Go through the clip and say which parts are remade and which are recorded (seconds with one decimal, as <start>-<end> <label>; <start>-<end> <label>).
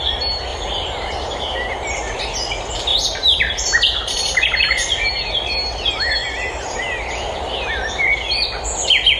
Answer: 0.0-0.5 recorded; 0.5-2.2 remade; 2.2-2.9 recorded; 2.9-5.3 remade; 5.3-9.2 recorded